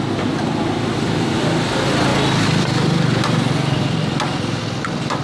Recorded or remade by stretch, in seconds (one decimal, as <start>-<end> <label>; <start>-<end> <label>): 0.0-5.2 recorded